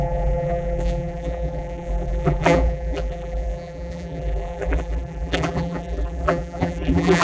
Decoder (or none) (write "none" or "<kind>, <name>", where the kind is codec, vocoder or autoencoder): vocoder, BigVGAN v2